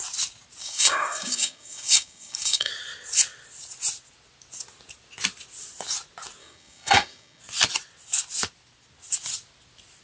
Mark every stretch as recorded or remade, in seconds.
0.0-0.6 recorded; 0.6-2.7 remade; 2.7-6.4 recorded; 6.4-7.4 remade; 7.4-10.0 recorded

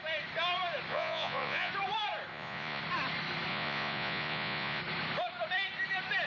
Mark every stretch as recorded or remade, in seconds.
0.0-0.9 recorded; 0.9-1.7 remade; 1.7-2.3 recorded; 2.3-2.8 remade; 2.8-3.5 recorded; 3.5-4.8 remade; 4.8-6.3 recorded